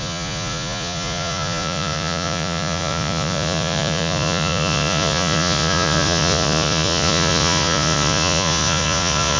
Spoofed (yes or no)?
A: yes